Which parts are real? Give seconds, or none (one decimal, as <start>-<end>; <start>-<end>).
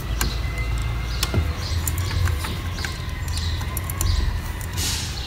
0.0-4.7